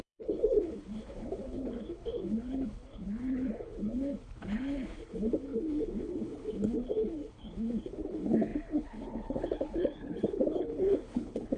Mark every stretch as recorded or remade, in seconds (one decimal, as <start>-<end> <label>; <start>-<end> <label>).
0.0-11.6 remade